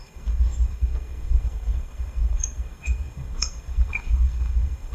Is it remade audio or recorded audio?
remade